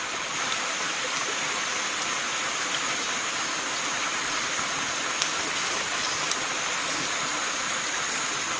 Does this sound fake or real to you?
real